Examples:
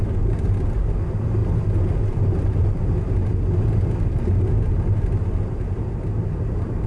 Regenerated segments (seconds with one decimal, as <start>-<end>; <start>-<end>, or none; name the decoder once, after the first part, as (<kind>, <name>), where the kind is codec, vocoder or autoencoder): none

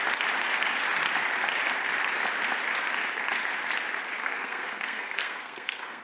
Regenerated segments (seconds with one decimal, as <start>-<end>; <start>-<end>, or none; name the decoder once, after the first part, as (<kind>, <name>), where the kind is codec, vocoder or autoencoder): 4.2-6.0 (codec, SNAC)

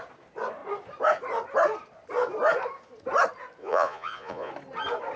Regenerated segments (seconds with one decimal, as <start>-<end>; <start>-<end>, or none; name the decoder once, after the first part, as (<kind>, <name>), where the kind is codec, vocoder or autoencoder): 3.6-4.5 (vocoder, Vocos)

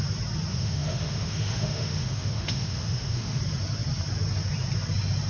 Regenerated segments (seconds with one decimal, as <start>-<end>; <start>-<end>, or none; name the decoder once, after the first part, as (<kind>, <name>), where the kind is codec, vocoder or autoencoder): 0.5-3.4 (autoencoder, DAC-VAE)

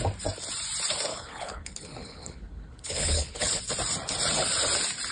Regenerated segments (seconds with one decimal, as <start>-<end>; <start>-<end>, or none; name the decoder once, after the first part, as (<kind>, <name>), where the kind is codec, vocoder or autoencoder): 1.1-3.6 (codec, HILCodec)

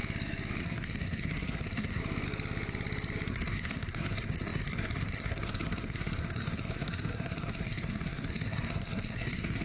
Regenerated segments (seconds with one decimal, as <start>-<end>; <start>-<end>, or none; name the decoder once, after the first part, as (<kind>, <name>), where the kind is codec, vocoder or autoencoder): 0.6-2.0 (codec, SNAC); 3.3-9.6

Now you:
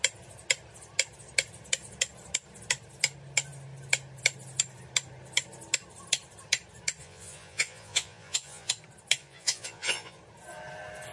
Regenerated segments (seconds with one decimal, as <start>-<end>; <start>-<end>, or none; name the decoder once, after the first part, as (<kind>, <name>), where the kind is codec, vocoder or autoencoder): 7.0-8.7 (vocoder, Vocos); 9.2-10.2